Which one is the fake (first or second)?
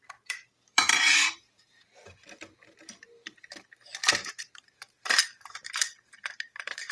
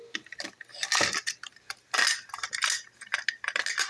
first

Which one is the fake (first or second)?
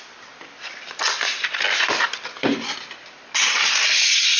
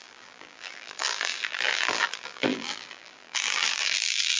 second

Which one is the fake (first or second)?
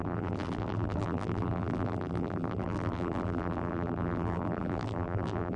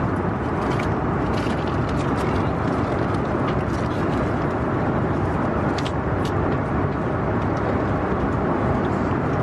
first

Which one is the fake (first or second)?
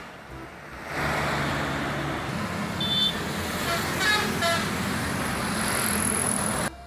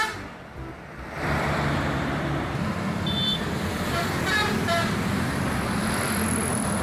second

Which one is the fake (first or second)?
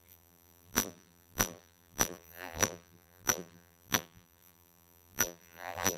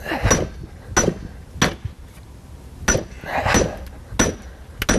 first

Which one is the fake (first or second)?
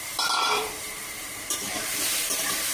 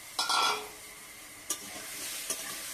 first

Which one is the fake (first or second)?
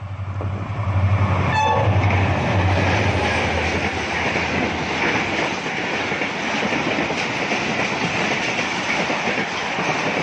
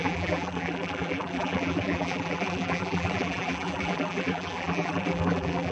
second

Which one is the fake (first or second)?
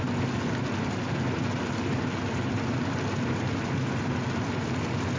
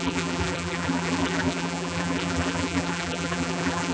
second